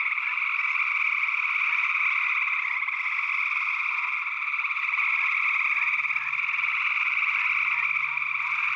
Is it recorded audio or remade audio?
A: recorded